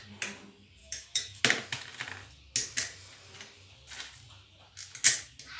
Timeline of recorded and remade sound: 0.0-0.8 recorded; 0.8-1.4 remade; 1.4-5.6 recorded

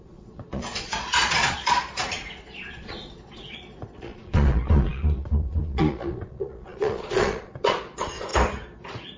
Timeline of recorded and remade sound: 0.0-8.3 remade; 8.3-9.2 recorded

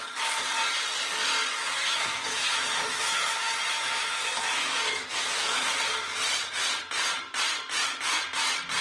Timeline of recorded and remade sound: 0.0-1.6 recorded; 1.6-5.8 remade; 5.8-8.8 recorded